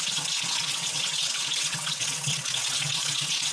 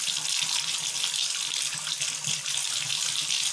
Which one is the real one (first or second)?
second